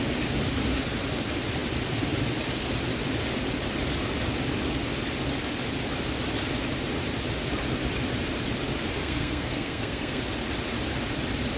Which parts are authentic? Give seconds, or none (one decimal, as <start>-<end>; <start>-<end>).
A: 0.0-9.0; 10.2-11.6